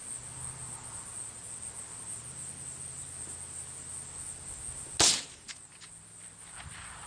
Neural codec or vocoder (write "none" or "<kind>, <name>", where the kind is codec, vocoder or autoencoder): none